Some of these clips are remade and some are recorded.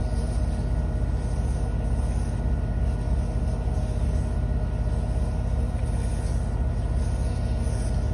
recorded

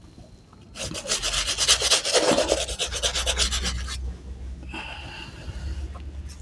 recorded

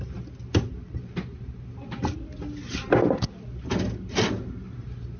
recorded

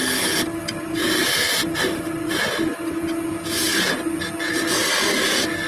recorded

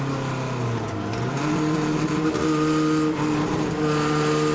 recorded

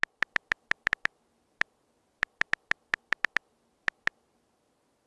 recorded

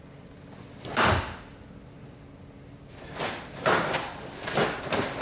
recorded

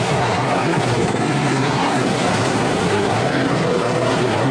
remade